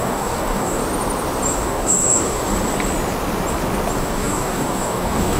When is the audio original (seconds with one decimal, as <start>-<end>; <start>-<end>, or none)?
0.8-1.6; 2.4-4.0